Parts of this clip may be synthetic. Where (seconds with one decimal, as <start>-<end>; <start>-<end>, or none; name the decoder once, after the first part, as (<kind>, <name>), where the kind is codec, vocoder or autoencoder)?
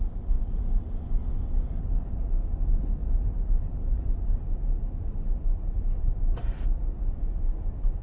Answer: none